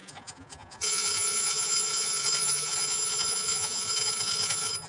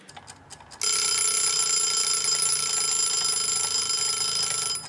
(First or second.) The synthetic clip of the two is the first